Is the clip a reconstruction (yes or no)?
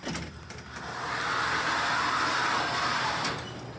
no